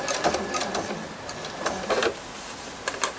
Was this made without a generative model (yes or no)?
yes